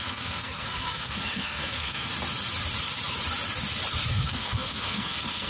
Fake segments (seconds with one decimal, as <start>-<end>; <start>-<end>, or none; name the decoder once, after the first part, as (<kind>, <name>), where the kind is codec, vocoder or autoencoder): 0.0-2.1 (codec, SNAC); 4.1-5.5